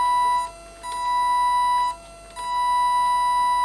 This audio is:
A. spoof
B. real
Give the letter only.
B